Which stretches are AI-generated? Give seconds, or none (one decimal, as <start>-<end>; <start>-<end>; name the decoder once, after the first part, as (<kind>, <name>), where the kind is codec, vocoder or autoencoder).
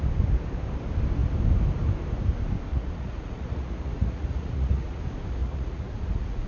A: 2.7-5.0 (vocoder, Vocos); 5.4-6.5